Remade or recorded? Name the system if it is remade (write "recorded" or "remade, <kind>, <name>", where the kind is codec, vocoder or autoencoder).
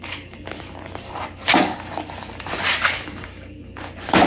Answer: remade, codec, DAC